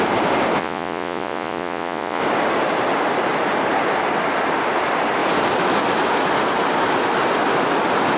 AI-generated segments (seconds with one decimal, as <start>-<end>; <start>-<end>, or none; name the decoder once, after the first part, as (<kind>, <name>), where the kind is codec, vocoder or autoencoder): 0.6-2.2 (vocoder, Vocos)